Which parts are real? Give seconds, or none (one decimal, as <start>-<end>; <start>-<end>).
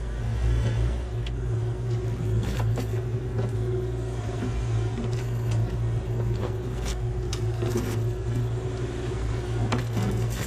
8.4-9.1